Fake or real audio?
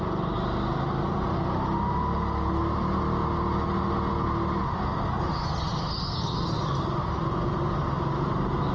real